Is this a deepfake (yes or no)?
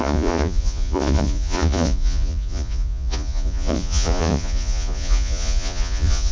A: yes